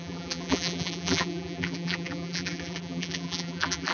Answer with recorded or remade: remade